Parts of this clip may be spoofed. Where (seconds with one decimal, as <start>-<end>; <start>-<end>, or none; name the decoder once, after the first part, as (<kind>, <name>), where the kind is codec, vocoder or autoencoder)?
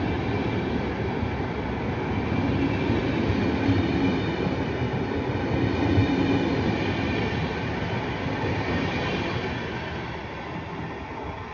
none